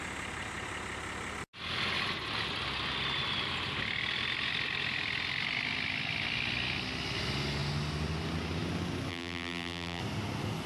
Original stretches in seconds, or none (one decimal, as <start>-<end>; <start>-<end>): 0.0-9.1; 10.0-10.7